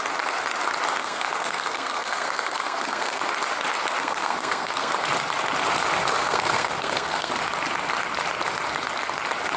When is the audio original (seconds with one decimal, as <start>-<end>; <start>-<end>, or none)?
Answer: 0.0-1.0; 3.2-4.0; 4.9-6.2; 7.3-9.6